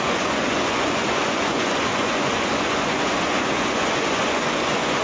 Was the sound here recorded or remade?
remade